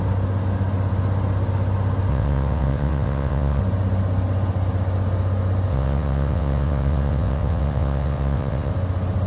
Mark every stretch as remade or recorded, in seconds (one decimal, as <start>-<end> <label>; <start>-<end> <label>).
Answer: 0.0-2.1 recorded; 2.1-3.6 remade; 3.6-5.7 recorded; 5.7-8.7 remade; 8.7-9.3 recorded